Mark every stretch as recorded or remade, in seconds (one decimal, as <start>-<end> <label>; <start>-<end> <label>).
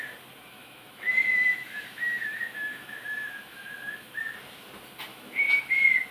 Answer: 0.0-0.5 recorded; 0.5-4.2 remade; 4.2-5.1 recorded; 5.1-5.6 remade; 5.6-6.1 recorded